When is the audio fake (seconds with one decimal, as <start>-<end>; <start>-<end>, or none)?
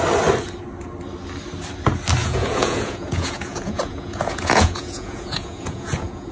2.2-6.3